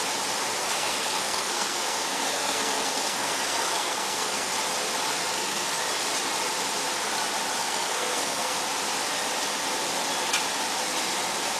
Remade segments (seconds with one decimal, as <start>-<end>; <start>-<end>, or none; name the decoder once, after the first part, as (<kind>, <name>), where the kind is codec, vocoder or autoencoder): 0.6-4.5 (codec, SNAC); 5.3-5.8; 7.6-8.6